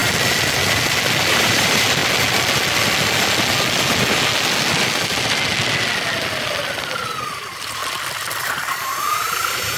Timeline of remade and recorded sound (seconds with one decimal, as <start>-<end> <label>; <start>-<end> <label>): 0.0-1.3 recorded; 1.3-2.0 remade; 2.0-7.3 recorded; 7.3-7.8 remade; 7.8-8.4 recorded; 8.4-9.8 remade